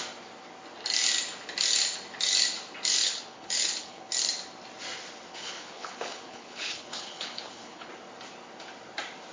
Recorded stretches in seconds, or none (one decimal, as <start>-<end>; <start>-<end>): 0.0-3.0; 4.1-5.3; 7.9-9.3